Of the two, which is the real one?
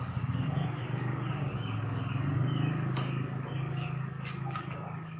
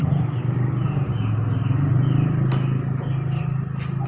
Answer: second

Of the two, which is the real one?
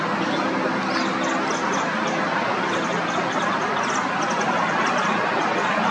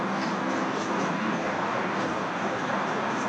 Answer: first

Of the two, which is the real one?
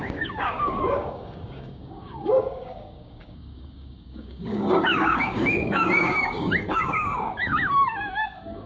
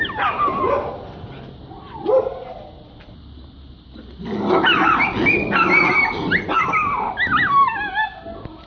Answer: second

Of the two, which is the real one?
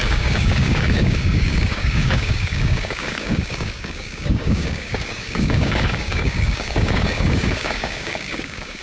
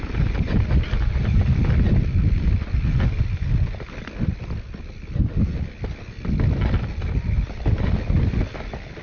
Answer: second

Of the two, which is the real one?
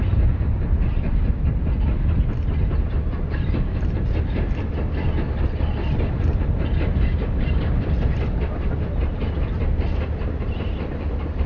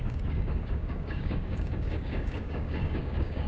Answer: first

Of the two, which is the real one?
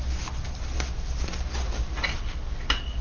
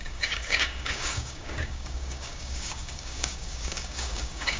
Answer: first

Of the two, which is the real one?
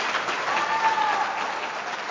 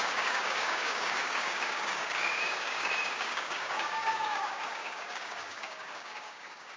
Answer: first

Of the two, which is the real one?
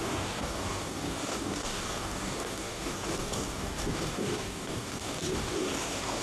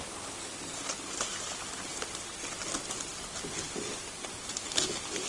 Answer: second